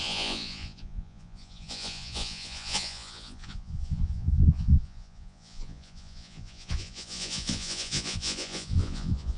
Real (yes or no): no